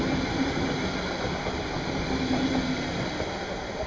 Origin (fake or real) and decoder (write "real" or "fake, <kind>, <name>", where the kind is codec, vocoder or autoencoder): real